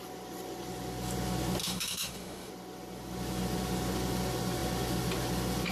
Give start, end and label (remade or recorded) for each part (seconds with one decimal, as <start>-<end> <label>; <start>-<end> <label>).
0.0-1.6 recorded; 1.6-2.5 remade; 2.5-5.7 recorded